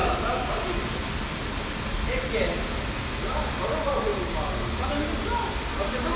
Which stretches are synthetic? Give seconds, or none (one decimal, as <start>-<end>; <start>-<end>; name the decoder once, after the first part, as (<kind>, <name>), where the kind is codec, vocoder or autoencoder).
none